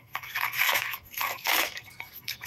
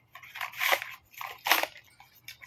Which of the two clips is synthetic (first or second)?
first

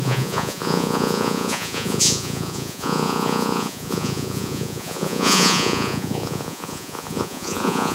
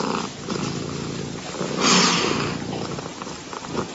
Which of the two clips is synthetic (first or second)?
first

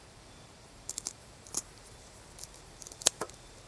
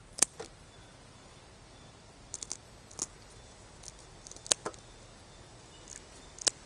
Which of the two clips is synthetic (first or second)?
first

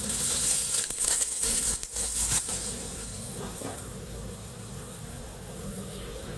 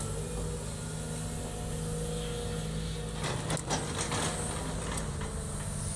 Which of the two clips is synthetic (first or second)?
first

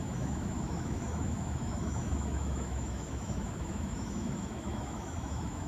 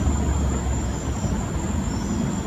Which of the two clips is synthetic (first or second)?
first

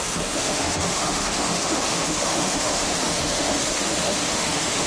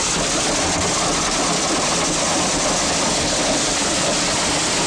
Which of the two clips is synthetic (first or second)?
first